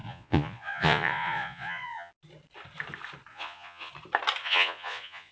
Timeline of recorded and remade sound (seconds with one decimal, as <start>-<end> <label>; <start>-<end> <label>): 0.0-2.1 remade; 2.1-3.3 recorded; 3.3-3.9 remade; 3.9-4.4 recorded; 4.4-5.3 remade